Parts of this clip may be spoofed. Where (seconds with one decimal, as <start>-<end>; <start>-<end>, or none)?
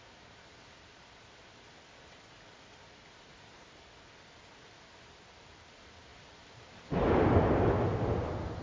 none